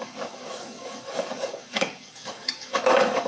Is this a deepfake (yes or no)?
yes